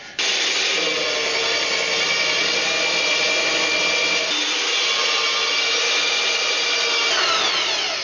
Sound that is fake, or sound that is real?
real